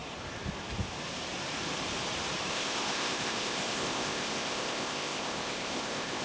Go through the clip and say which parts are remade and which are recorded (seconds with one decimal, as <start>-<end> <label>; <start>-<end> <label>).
0.0-2.5 recorded; 2.5-6.2 remade